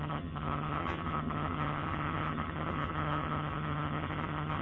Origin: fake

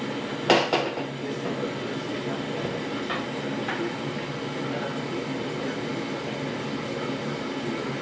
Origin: real